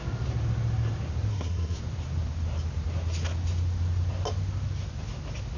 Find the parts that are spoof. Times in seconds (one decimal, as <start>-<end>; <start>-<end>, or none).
1.3-1.8